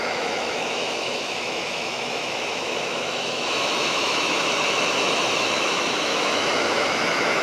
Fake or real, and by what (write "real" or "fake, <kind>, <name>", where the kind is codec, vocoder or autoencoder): fake, autoencoder, DAC-VAE